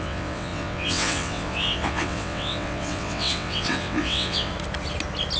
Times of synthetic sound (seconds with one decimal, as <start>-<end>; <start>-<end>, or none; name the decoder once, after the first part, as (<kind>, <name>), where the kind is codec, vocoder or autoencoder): 0.0-4.5 (vocoder, WaveNeXt)